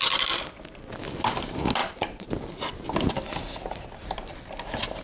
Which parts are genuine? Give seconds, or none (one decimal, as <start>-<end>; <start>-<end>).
0.0-1.8; 2.3-5.0